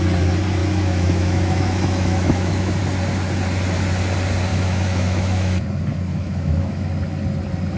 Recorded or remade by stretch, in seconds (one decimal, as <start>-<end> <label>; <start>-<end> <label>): 0.0-0.6 recorded; 0.6-2.8 remade; 2.8-4.5 recorded; 4.5-5.6 remade; 5.6-6.1 recorded; 6.1-6.9 remade; 6.9-7.8 recorded